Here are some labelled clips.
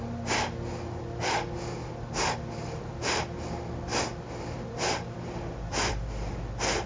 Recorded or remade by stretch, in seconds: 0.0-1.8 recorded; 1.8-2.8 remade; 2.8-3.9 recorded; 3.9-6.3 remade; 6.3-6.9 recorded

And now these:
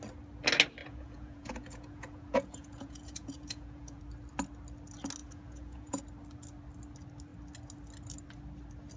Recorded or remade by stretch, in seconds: 0.0-0.8 recorded; 0.8-4.0 remade; 4.0-5.2 recorded; 5.2-6.0 remade; 6.0-9.0 recorded

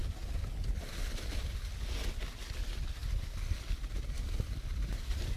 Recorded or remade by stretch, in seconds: 0.0-5.4 recorded

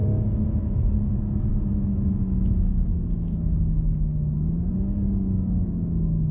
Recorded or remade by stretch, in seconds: 0.0-1.1 remade; 1.1-1.5 recorded; 1.5-4.3 remade; 4.3-6.3 recorded

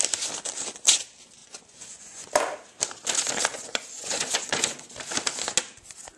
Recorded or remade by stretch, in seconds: 0.0-1.4 recorded; 1.4-2.3 remade; 2.3-3.5 recorded; 3.5-4.9 remade; 4.9-6.2 recorded

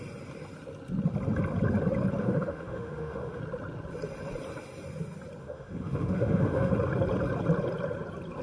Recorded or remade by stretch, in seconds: 0.0-2.2 recorded; 2.2-3.4 remade; 3.4-5.4 recorded; 5.4-6.7 remade; 6.7-8.4 recorded